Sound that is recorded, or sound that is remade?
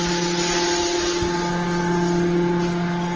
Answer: recorded